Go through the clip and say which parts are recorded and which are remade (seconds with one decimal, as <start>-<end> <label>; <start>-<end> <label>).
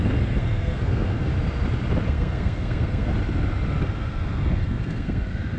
0.0-1.3 remade; 1.3-2.1 recorded; 2.1-3.1 remade; 3.1-3.8 recorded; 3.8-5.6 remade